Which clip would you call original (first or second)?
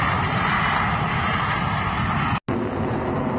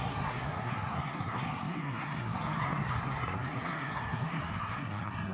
first